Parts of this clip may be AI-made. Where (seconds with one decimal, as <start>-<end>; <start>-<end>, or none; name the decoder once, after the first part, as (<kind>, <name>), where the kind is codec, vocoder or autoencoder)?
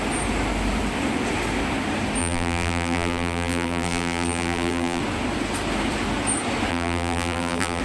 2.2-5.0 (vocoder, BigVGAN v2); 6.7-7.8